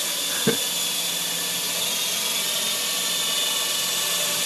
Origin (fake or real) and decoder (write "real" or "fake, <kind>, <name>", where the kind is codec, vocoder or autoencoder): real